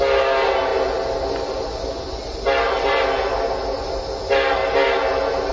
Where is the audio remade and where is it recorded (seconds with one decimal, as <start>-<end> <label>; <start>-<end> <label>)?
0.0-5.5 recorded